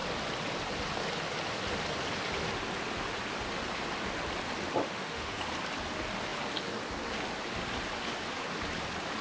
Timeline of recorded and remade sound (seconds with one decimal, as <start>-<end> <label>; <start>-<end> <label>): 0.0-4.8 recorded; 4.8-5.4 remade; 5.4-9.2 recorded